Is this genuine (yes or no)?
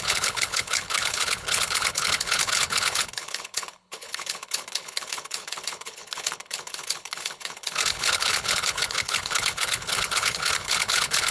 no